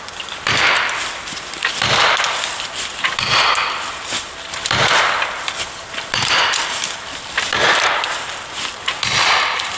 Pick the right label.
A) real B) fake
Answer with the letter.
B